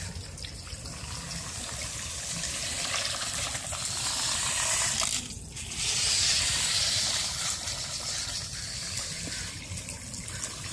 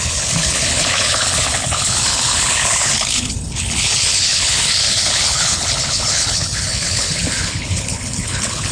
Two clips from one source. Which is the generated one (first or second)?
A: second